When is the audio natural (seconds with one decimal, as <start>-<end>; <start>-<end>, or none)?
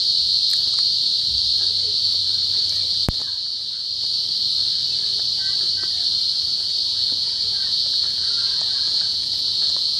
0.0-6.9